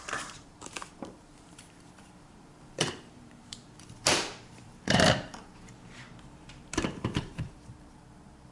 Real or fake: fake